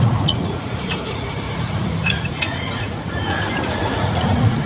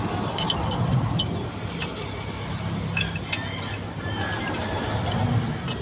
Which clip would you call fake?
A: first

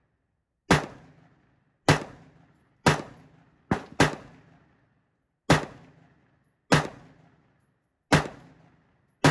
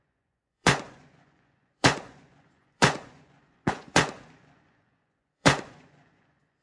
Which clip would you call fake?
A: second